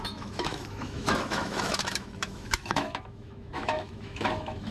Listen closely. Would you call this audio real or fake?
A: fake